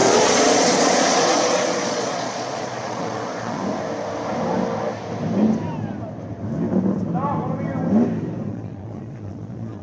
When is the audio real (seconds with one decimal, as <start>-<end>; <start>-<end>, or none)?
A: 3.6-8.5